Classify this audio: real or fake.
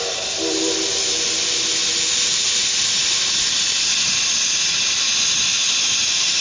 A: real